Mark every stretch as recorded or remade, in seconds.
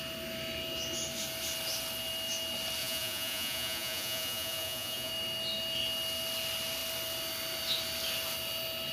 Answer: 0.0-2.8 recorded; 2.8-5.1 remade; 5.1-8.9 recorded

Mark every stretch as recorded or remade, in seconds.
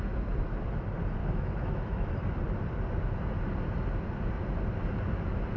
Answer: 0.0-1.2 recorded; 1.2-2.1 remade; 2.1-5.6 recorded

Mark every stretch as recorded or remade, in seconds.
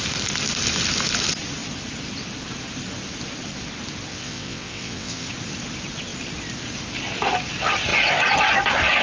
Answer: 0.0-4.1 recorded; 4.1-5.3 remade; 5.3-9.0 recorded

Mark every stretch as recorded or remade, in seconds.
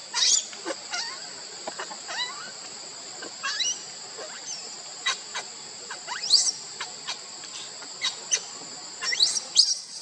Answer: 0.0-10.0 recorded